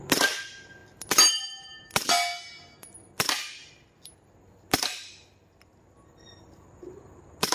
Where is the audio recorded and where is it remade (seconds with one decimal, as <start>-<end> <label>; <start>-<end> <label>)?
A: 0.0-7.5 recorded